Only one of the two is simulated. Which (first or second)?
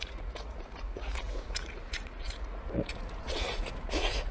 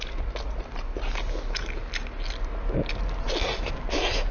first